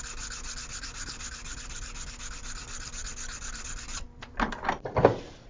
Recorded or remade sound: recorded